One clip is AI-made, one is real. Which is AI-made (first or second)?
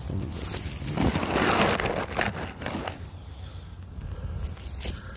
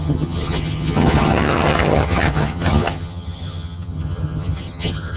second